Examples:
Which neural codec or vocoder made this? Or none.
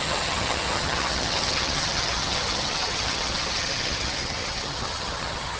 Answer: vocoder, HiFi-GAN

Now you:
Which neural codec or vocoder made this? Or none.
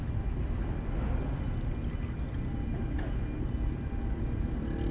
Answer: none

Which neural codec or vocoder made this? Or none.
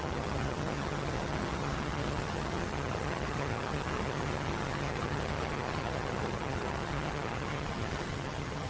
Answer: vocoder, HiFi-GAN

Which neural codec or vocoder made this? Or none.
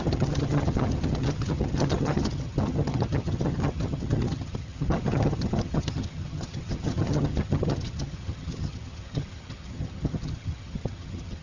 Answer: vocoder, HiFi-GAN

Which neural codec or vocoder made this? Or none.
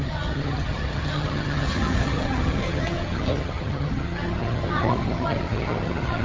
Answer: vocoder, HiFi-GAN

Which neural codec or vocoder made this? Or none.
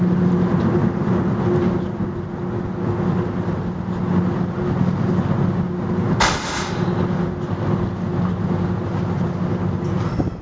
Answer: none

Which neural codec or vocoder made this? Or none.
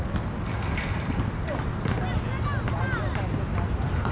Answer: none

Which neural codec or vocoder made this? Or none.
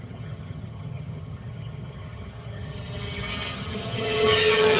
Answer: vocoder, HiFi-GAN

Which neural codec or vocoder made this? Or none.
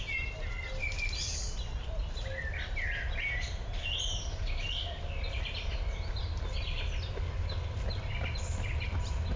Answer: none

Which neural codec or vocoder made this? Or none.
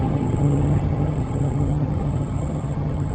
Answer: vocoder, HiFi-GAN